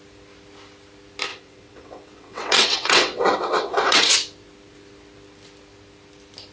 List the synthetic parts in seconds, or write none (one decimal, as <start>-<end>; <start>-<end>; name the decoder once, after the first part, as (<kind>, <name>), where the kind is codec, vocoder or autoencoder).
1.3-4.1 (vocoder, WaveNeXt)